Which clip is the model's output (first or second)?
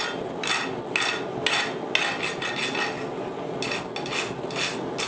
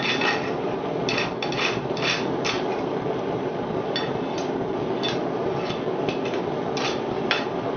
second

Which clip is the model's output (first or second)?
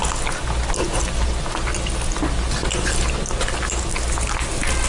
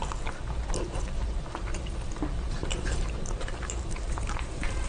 second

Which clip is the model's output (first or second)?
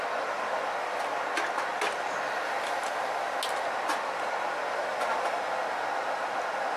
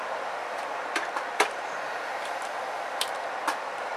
second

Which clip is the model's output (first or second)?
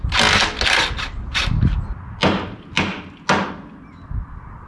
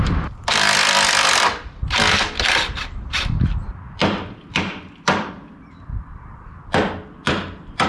second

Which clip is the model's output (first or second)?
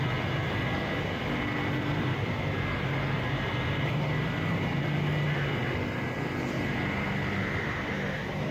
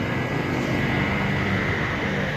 first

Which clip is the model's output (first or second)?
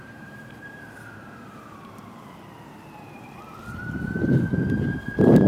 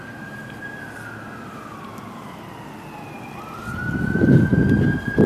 first